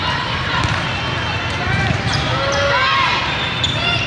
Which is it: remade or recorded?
recorded